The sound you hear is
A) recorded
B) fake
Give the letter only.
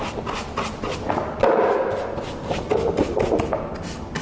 A